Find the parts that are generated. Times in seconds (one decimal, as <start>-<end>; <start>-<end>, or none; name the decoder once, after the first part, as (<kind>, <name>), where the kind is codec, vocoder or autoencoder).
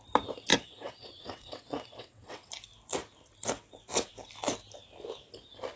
0.5-2.5 (vocoder, WaveNeXt)